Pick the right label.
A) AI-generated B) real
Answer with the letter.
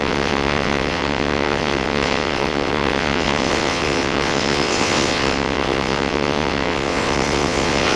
A